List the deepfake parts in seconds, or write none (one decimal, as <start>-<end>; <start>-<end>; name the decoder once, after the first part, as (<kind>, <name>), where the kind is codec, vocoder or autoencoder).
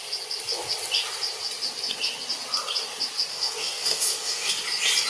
3.3-4.5 (codec, DAC)